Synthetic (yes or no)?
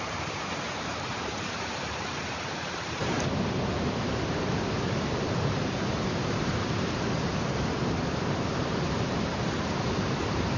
yes